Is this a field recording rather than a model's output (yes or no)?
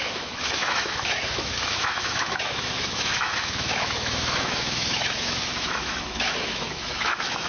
no